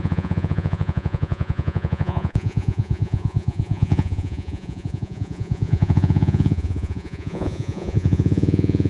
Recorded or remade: remade